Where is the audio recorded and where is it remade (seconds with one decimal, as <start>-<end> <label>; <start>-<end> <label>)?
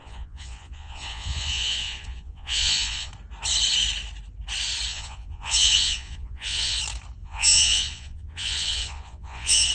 0.0-3.1 remade; 3.1-4.9 recorded; 4.9-6.8 remade; 6.8-7.2 recorded; 7.2-9.7 remade